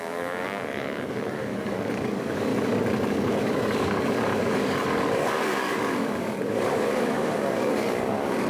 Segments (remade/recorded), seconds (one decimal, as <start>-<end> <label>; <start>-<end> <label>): 0.0-2.5 remade; 2.5-3.0 recorded; 3.0-8.5 remade